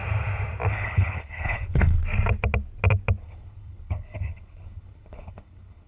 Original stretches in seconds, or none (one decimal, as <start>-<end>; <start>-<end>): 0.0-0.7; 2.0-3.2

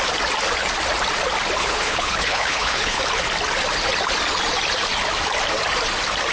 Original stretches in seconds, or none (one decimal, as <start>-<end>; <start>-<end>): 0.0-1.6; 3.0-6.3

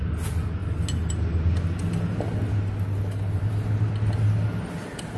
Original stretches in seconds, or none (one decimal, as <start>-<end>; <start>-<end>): 0.0-5.2

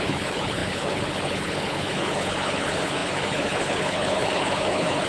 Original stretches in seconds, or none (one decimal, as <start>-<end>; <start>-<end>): none